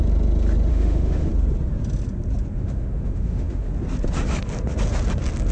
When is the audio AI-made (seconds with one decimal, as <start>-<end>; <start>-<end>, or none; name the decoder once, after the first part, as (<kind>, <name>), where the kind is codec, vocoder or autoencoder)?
0.7-1.3 (autoencoder, DAC-VAE); 2.6-3.7